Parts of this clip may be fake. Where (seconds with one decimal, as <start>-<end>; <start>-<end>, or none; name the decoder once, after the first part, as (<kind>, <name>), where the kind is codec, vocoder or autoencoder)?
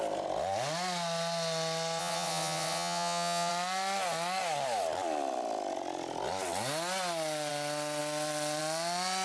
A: 2.0-3.5 (vocoder, WaveNeXt)